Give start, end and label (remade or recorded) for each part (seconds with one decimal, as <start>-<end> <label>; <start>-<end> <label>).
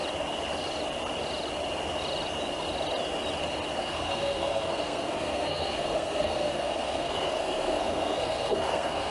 0.0-3.8 recorded; 3.8-9.1 remade